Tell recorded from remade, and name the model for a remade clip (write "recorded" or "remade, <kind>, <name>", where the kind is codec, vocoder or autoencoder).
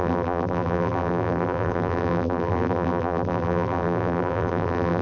remade, vocoder, BigVGAN v2